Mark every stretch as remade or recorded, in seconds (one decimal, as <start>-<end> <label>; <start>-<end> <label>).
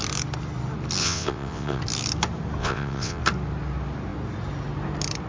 0.0-1.0 recorded; 1.0-1.8 remade; 1.8-2.6 recorded; 2.6-3.2 remade; 3.2-5.3 recorded